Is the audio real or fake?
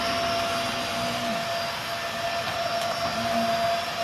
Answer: real